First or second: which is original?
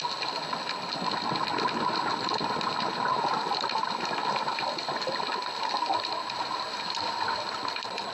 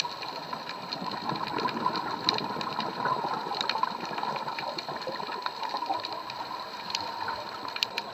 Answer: first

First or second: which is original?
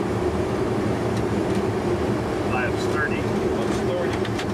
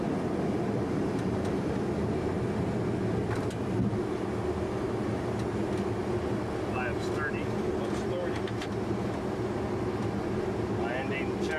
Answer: second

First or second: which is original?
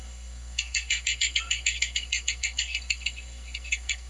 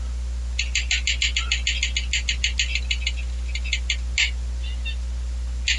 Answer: second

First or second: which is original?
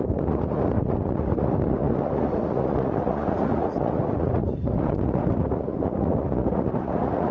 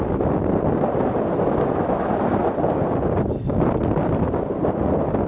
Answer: second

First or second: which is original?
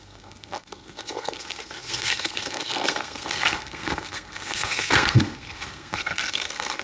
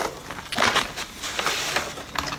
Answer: second